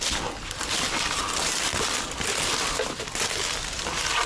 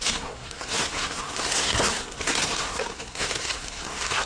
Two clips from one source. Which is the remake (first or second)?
second